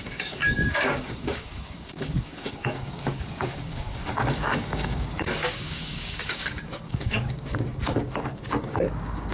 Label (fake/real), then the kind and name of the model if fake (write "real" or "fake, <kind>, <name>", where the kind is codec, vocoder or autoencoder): fake, codec, DAC